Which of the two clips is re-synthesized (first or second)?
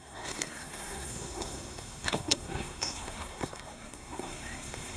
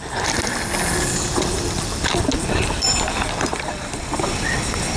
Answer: first